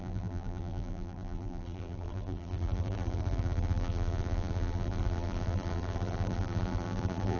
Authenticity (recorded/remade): remade